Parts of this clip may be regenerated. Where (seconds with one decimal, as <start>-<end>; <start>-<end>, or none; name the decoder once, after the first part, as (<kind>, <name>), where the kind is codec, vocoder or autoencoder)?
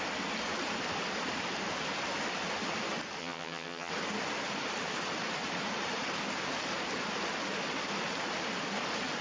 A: 3.2-3.9 (vocoder, HiFi-GAN)